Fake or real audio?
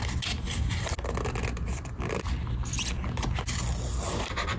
real